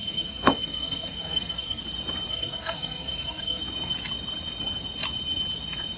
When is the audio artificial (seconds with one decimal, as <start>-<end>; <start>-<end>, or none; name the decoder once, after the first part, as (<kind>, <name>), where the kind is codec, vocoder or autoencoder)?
0.0-1.8 (codec, SNAC); 2.3-3.6